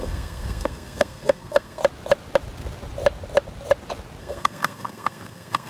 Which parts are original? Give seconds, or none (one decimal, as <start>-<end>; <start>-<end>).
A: 1.8-4.2